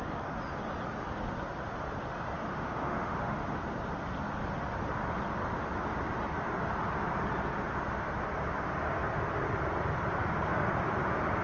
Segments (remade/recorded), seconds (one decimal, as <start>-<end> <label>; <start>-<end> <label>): 0.0-2.5 recorded; 2.5-3.4 remade; 3.4-11.4 recorded